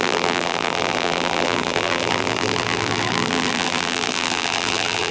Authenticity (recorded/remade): remade